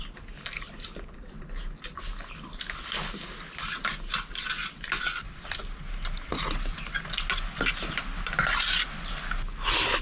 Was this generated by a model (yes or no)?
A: no